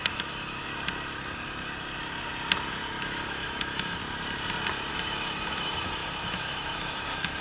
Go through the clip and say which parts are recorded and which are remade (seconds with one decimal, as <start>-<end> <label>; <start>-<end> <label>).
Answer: 0.0-0.7 remade; 0.7-3.0 recorded; 3.0-4.0 remade; 4.0-4.9 recorded; 4.9-7.4 remade